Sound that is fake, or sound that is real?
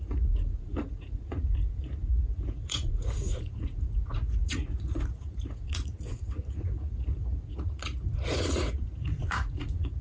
fake